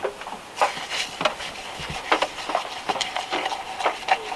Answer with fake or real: real